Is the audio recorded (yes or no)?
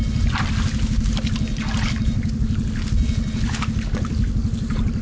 yes